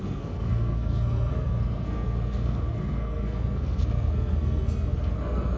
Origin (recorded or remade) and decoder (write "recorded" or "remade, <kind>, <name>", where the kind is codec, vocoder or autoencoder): remade, codec, SNAC